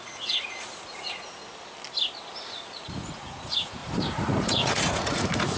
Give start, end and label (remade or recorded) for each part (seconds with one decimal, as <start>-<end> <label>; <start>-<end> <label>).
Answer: 0.0-1.4 remade; 1.4-2.4 recorded; 2.4-5.6 remade